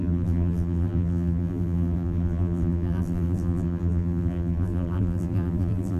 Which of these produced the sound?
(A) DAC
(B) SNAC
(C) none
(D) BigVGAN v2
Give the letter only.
D